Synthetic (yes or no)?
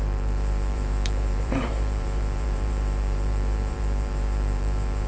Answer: yes